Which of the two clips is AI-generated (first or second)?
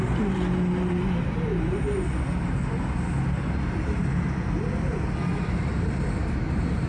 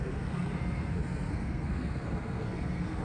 second